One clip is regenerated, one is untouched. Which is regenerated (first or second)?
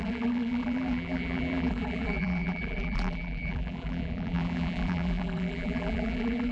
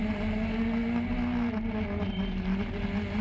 first